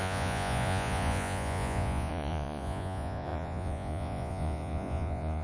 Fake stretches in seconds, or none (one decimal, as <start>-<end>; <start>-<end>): 0.0-5.4